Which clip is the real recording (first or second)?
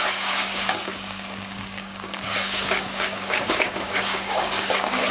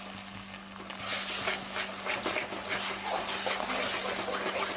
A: second